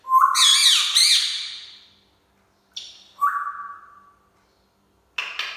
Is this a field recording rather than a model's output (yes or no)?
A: yes